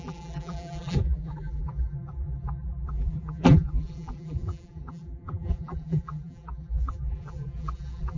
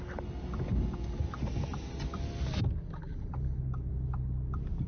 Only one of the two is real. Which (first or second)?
second